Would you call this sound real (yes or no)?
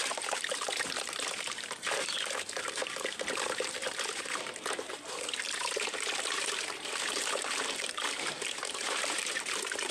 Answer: no